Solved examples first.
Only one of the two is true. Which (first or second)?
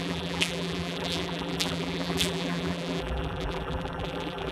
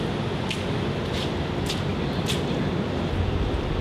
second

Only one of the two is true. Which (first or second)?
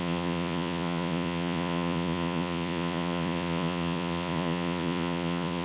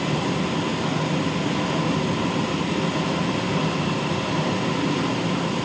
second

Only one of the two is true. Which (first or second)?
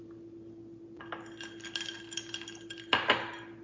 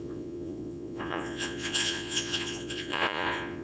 first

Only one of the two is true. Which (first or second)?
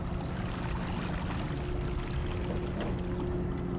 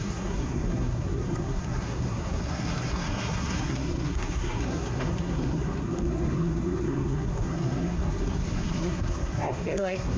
first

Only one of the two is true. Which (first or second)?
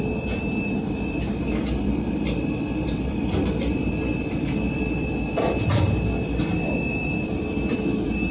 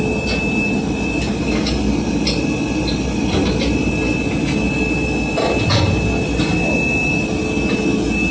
second